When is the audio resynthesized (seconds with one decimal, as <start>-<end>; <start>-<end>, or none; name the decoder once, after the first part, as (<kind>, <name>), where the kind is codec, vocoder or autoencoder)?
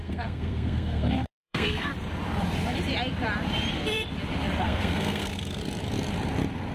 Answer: 0.0-1.9 (codec, SNAC); 4.6-5.6